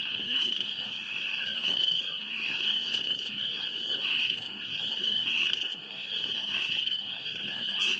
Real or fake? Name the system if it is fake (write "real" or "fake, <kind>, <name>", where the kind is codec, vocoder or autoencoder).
fake, codec, SNAC